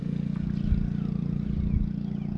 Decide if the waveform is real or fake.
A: real